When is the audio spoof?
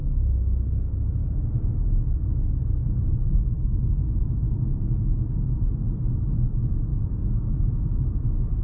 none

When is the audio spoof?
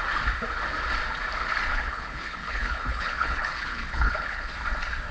1.7-4.5 (codec, HILCodec)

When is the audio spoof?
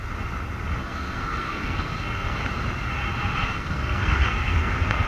0.8-2.4 (codec, SNAC); 3.4-5.1